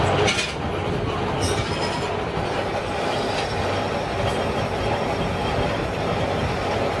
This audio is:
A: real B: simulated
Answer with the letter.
A